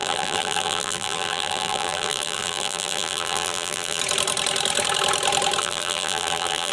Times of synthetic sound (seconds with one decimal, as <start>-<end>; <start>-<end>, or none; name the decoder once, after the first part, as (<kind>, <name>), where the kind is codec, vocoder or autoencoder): 0.0-4.0 (vocoder, BigVGAN v2); 5.6-6.7